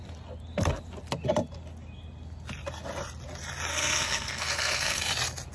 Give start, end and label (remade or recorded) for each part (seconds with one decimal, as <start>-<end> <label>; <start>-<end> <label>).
0.0-3.7 recorded; 3.7-5.0 remade; 5.0-5.5 recorded